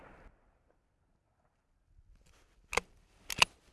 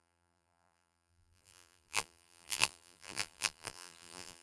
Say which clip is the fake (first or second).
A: second